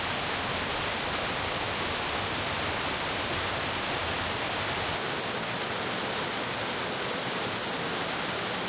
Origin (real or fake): real